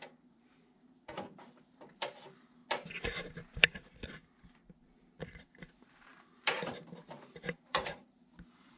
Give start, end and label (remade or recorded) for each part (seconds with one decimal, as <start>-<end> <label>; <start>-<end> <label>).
0.0-2.6 remade; 2.6-5.3 recorded; 5.3-8.8 remade